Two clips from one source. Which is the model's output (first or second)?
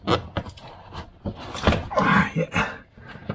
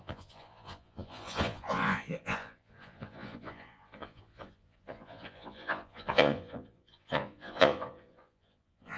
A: second